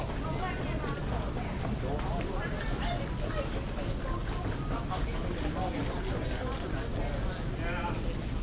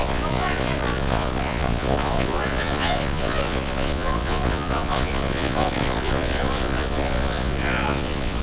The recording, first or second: first